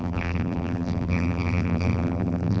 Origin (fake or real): fake